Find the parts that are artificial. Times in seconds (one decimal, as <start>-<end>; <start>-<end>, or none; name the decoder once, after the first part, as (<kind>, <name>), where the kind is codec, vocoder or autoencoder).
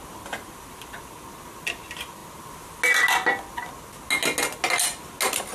none